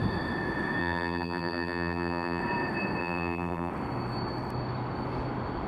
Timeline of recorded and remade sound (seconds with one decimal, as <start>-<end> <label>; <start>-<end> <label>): 0.0-0.8 recorded; 0.8-2.4 remade; 2.4-3.0 recorded; 3.0-3.7 remade; 3.7-5.7 recorded